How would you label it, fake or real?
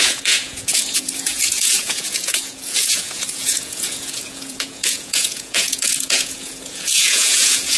fake